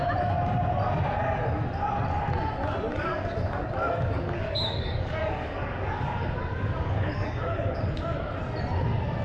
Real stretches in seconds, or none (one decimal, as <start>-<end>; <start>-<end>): 0.0-2.9; 7.8-9.2